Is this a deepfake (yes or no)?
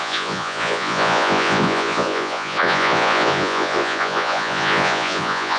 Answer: yes